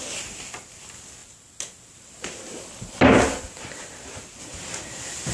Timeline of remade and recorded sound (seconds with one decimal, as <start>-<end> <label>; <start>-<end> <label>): 0.0-5.3 recorded